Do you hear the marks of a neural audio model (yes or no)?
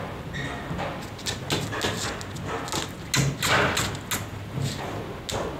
no